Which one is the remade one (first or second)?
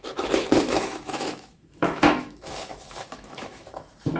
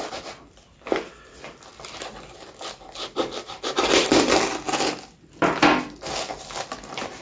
first